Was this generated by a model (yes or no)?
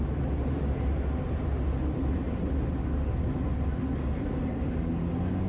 no